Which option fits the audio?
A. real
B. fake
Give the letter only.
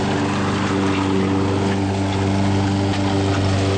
A